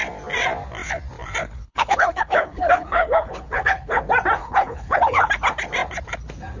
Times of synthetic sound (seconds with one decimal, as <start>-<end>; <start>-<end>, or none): 1.4-4.0; 4.4-5.3